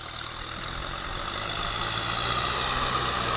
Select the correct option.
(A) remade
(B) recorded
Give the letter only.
B